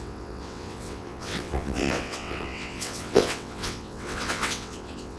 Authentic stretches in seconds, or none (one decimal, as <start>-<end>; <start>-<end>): none